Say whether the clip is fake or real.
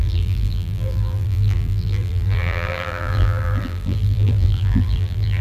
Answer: fake